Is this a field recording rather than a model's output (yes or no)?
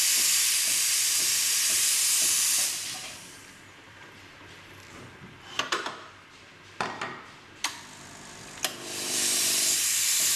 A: no